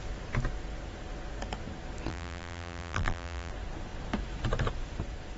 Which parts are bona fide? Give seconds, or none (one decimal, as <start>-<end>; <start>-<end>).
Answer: 0.0-2.1; 3.5-5.4